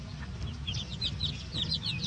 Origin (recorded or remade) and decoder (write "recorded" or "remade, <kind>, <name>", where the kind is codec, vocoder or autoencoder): recorded